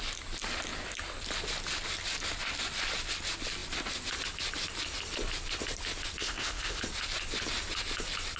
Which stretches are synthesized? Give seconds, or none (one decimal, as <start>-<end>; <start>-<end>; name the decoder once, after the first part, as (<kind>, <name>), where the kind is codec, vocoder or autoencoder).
6.2-6.8 (codec, ZipCodec)